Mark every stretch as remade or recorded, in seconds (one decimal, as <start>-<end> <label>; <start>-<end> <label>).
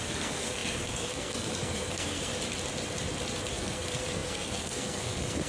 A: 0.0-2.3 remade; 2.3-3.5 recorded; 3.5-5.5 remade